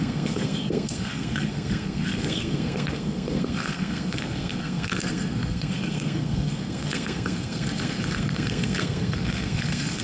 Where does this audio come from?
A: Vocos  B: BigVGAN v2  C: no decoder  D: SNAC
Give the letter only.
D